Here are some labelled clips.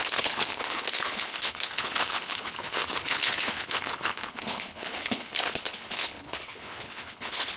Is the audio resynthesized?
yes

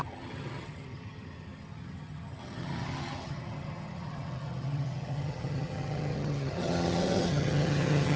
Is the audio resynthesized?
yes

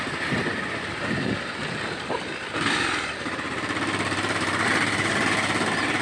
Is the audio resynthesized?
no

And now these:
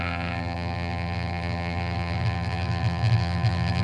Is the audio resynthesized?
yes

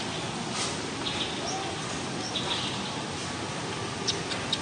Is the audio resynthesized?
no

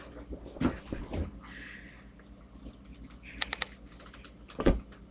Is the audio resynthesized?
no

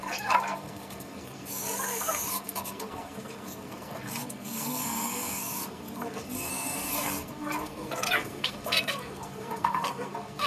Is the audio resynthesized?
yes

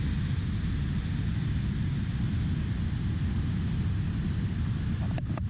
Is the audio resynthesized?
no